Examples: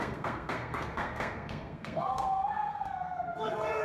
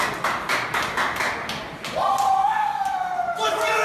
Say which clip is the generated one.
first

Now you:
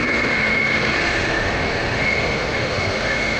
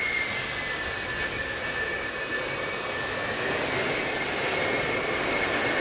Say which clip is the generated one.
first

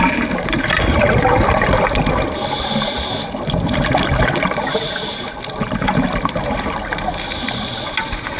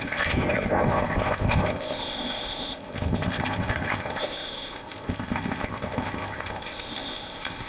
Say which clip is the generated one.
second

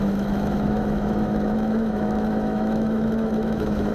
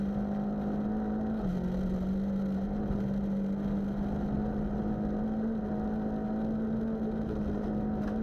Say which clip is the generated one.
first